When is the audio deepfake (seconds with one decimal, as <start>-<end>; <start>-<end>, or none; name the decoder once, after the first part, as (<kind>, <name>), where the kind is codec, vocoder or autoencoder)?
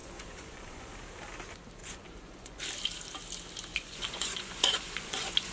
0.0-0.9 (vocoder, Vocos); 1.8-2.6; 3.7-5.5